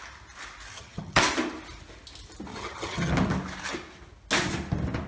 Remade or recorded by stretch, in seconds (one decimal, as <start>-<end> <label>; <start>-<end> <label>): 0.0-0.7 recorded; 0.7-1.2 remade; 1.2-2.5 recorded; 2.5-3.1 remade; 3.1-5.1 recorded